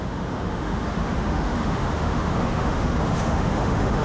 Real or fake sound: fake